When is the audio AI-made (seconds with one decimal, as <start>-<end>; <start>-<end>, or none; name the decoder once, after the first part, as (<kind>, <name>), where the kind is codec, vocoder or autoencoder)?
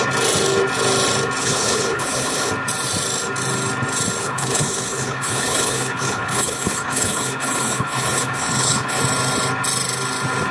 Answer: 1.4-2.5 (codec, HILCodec); 4.2-9.0